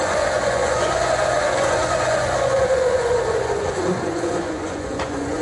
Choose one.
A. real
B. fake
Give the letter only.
B